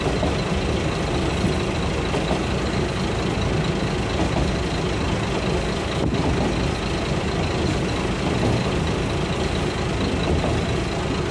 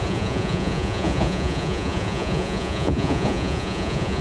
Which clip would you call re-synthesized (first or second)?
second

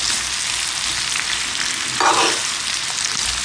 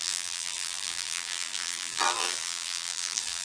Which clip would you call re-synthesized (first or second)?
second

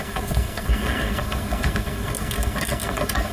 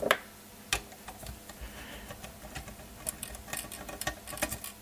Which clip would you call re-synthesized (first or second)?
first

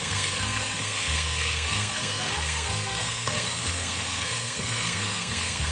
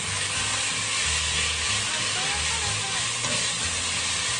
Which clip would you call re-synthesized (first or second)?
first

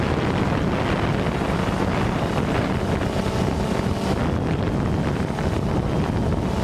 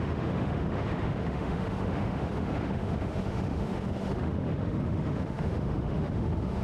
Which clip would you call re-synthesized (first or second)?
second